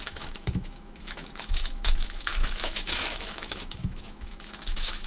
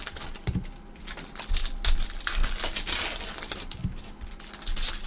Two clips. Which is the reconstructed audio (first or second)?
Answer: first